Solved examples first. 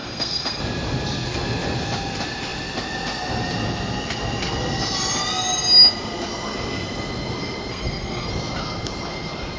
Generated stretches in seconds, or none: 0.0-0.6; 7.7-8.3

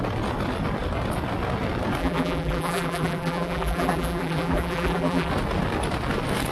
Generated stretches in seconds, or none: 2.0-5.3

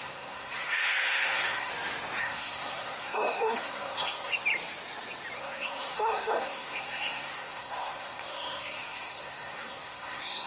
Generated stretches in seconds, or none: 0.0-1.7; 2.2-4.3; 5.4-10.5

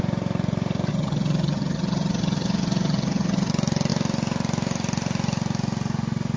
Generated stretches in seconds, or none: 0.9-3.5

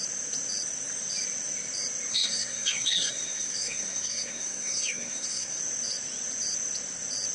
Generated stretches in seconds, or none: 2.1-5.6

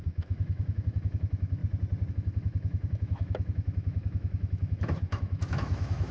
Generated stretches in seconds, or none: 0.0-1.6; 2.1-6.1

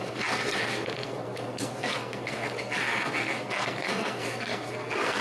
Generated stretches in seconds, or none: 0.0-5.2

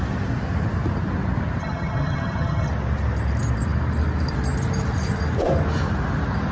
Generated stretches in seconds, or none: 1.6-2.7